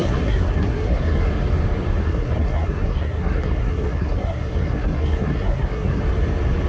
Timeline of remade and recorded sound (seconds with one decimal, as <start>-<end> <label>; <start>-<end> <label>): 0.0-1.3 remade; 1.3-2.0 recorded; 2.0-6.0 remade; 6.0-6.7 recorded